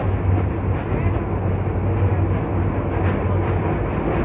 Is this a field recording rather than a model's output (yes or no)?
yes